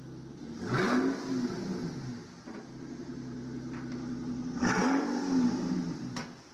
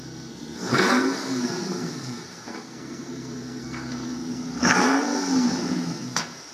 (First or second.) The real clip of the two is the first